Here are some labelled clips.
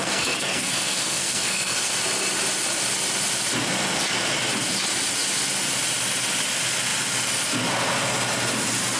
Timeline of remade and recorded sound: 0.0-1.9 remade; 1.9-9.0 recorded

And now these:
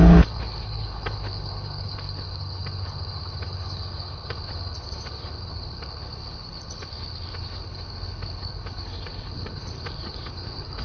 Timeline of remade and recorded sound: 0.0-10.8 remade

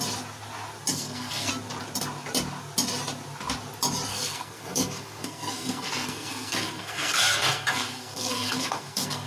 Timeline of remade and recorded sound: 0.0-0.9 recorded; 0.9-1.5 remade; 1.5-4.1 recorded; 4.1-9.3 remade

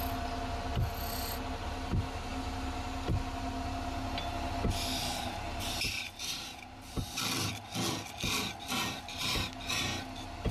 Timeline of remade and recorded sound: 0.0-10.5 recorded

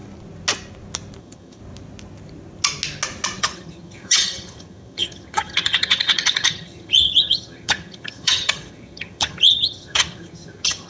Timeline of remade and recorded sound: 0.0-1.2 recorded; 1.2-1.6 remade; 1.6-3.4 recorded; 3.4-10.9 remade

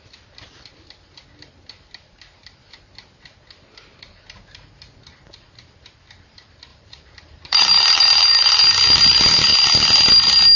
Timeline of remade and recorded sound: 0.0-6.7 recorded; 6.7-8.6 remade; 8.6-10.6 recorded